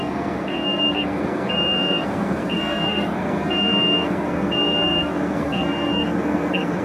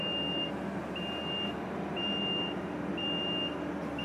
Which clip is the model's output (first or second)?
first